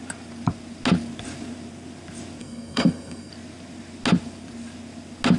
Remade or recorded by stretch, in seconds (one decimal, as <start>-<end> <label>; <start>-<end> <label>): 0.0-2.4 recorded; 2.4-3.3 remade; 3.3-5.4 recorded